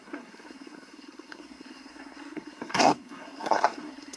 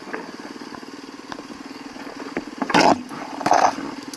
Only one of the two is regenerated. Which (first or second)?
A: first